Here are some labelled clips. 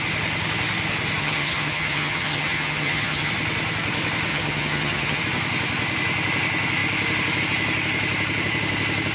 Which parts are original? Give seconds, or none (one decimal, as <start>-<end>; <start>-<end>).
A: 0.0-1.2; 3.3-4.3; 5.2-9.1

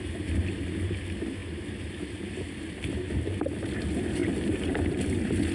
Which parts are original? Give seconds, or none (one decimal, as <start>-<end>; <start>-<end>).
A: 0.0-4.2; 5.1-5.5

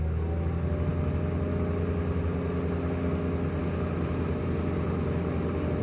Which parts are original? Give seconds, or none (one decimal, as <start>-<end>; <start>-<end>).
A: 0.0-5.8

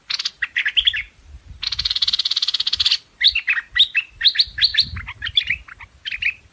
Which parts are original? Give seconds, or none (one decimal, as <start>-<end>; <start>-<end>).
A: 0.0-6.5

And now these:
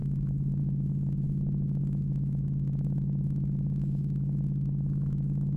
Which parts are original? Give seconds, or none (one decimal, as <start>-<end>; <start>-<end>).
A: 0.6-1.8

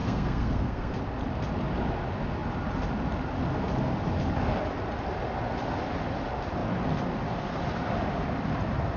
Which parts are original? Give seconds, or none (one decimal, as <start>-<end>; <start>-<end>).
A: 1.0-9.0

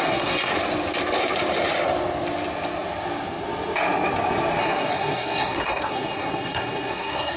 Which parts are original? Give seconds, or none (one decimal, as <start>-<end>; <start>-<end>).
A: 0.5-4.6